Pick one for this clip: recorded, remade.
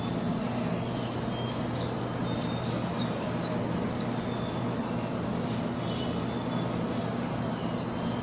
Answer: recorded